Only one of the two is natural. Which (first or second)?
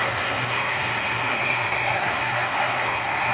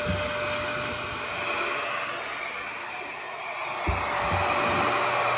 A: second